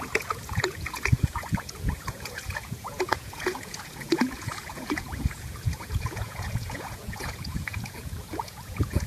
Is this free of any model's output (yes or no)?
no